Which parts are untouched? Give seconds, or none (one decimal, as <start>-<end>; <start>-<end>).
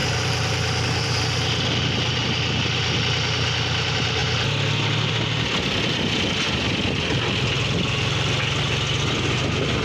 1.2-9.8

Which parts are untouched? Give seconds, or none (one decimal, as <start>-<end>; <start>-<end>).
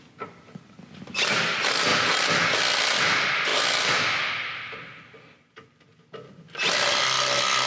0.0-7.7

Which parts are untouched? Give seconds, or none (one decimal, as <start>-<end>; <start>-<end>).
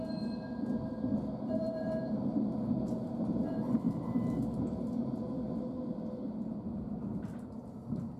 0.0-8.2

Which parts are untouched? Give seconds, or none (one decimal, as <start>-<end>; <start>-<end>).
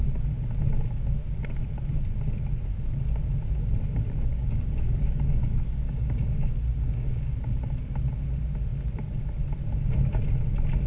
0.0-4.3; 7.3-10.9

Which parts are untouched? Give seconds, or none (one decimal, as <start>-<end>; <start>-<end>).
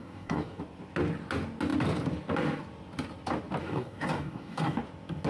0.6-3.6; 4.8-5.3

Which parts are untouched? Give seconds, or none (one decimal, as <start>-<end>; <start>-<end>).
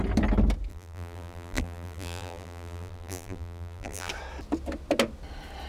0.0-0.7; 4.1-5.7